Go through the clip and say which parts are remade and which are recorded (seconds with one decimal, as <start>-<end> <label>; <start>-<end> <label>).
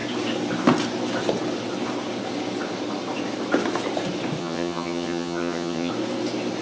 0.0-4.4 recorded; 4.4-5.9 remade; 5.9-6.6 recorded